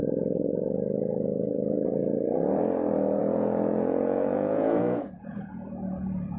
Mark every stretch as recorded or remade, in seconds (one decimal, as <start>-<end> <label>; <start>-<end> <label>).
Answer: 0.0-3.2 recorded; 3.2-6.4 remade